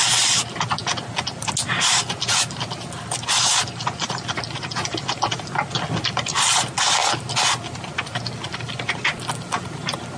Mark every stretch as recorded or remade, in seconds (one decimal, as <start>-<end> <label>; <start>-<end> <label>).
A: 0.0-10.2 recorded